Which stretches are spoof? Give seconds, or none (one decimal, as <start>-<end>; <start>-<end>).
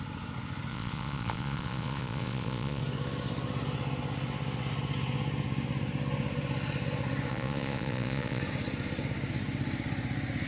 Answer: 0.7-2.8; 7.3-8.4